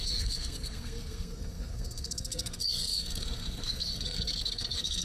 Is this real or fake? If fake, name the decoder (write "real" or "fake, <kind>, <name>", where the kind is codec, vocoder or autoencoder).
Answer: fake, codec, SNAC